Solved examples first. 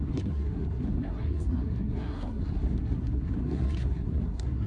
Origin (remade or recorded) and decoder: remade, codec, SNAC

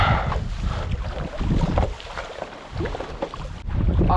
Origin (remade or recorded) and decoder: recorded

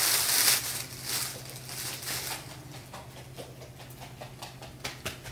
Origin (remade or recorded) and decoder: recorded